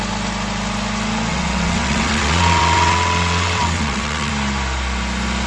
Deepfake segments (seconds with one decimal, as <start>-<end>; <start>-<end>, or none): 1.3-4.3